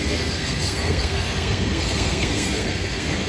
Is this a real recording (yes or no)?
no